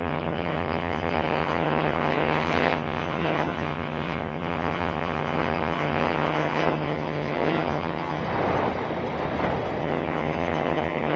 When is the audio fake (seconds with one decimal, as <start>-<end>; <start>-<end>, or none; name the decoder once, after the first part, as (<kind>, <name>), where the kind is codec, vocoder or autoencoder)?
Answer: 0.0-8.2 (vocoder, HiFi-GAN); 9.8-11.2